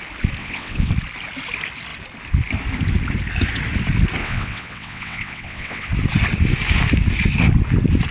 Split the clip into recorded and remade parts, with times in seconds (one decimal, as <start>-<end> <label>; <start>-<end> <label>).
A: 0.0-0.4 recorded; 0.4-0.9 remade; 0.9-4.2 recorded; 4.2-5.9 remade; 5.9-8.1 recorded